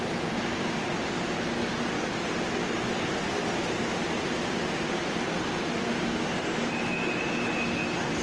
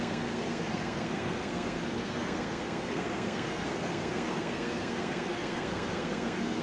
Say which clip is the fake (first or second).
second